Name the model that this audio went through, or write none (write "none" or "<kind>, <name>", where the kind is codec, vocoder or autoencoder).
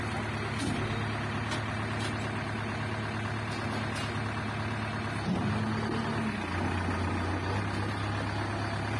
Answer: none